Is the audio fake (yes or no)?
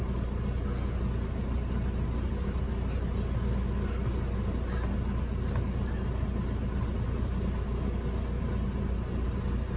no